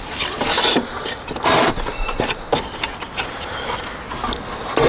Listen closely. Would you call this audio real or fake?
real